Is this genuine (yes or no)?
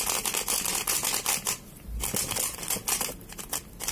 yes